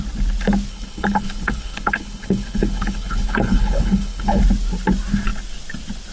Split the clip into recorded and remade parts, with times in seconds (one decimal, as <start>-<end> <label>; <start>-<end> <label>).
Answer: 0.0-0.7 recorded; 0.7-4.4 remade; 4.4-6.1 recorded